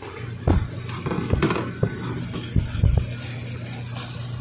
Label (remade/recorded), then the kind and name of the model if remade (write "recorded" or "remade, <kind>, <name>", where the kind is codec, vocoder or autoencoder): recorded